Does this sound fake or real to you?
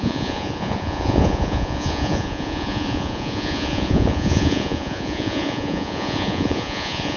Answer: fake